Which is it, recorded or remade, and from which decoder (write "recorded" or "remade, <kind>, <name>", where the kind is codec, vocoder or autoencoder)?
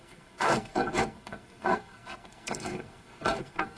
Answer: remade, codec, SNAC